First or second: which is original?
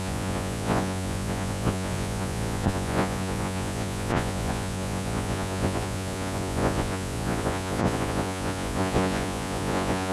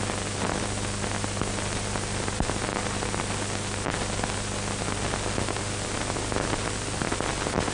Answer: second